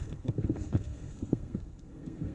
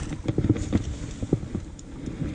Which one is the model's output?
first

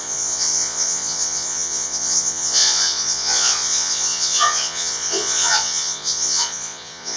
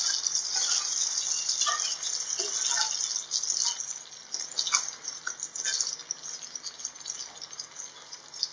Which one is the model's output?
first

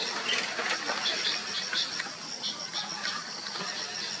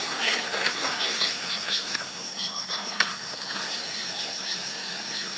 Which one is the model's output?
second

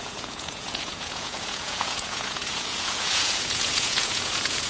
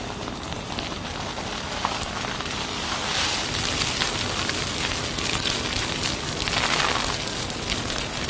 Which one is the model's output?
first